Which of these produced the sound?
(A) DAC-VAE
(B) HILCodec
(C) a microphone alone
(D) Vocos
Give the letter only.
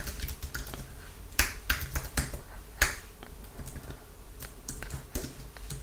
C